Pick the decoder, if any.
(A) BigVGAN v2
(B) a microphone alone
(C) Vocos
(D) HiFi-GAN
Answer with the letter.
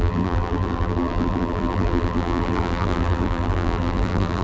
A